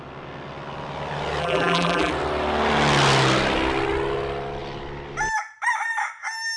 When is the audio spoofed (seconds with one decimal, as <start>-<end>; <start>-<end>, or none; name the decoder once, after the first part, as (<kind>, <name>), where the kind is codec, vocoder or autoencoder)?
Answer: 1.4-2.1 (vocoder, BigVGAN v2)